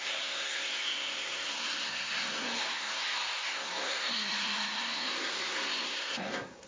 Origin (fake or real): fake